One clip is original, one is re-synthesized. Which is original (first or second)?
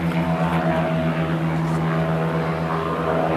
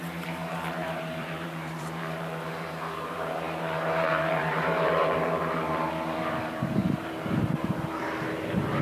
first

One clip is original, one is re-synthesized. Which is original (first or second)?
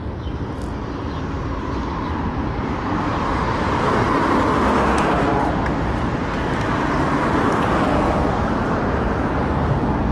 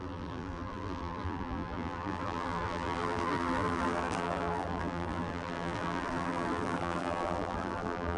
first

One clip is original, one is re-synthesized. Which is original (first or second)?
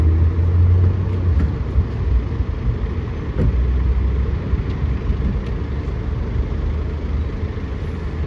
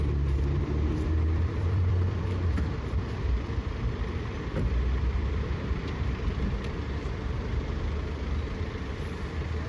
first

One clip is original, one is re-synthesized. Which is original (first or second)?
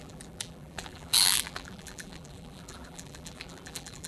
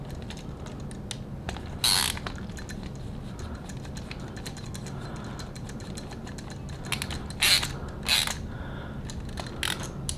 second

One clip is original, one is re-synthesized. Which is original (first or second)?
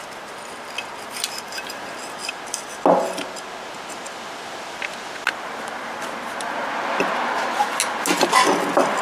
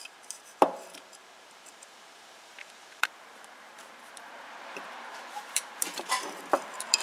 first